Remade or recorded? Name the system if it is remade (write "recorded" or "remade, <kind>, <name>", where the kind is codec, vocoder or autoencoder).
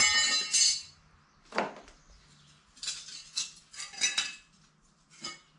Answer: recorded